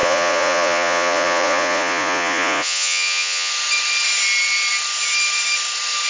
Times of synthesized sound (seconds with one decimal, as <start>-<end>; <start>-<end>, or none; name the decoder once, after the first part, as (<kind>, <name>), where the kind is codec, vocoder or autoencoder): 0.0-3.5 (vocoder, Vocos)